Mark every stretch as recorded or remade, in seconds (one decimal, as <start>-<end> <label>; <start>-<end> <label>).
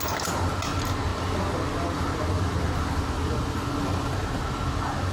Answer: 0.0-5.1 recorded